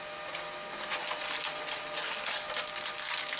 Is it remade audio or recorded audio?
recorded